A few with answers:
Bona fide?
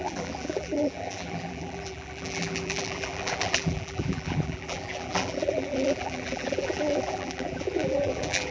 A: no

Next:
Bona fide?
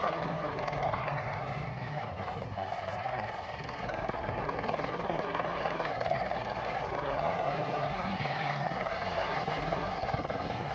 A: no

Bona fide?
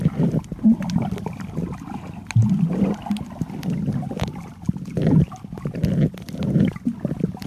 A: yes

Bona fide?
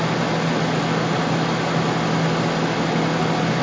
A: yes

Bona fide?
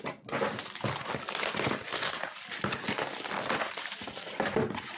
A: yes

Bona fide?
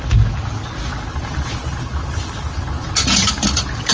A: yes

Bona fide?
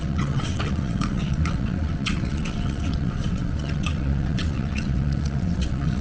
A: no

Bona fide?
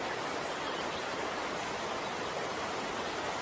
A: yes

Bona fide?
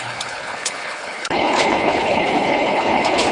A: no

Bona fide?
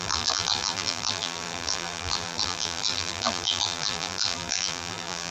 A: no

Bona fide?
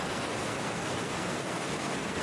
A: no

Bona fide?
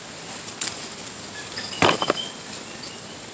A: yes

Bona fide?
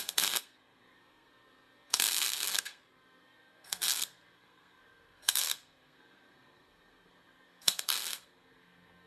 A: no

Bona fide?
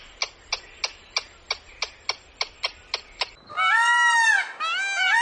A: yes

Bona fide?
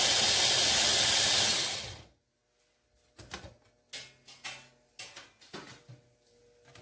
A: yes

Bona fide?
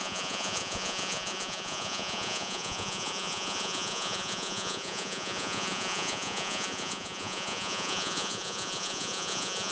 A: no